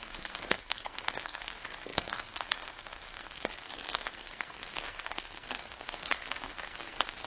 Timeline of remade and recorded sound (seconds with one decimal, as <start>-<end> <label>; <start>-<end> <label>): 0.0-7.3 remade